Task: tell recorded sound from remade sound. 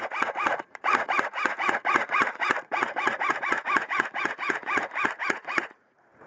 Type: remade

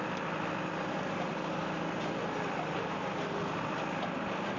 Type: remade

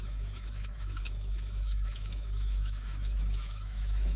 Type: remade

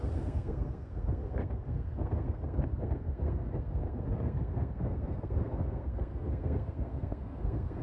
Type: remade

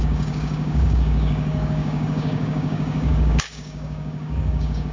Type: remade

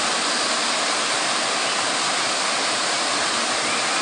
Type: recorded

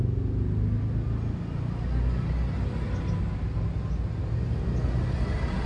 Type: recorded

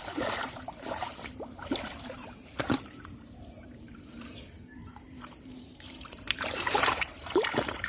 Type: remade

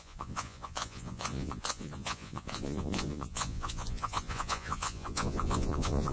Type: remade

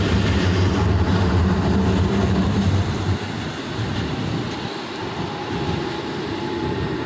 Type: remade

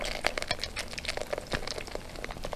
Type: recorded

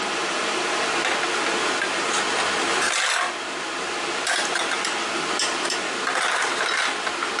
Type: recorded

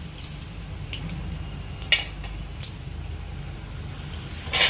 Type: recorded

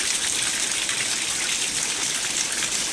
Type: recorded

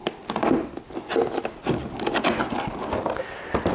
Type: recorded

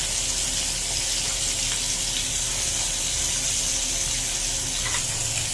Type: recorded